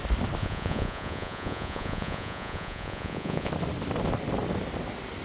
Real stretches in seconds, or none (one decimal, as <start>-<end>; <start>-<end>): 0.0-0.4; 3.5-5.2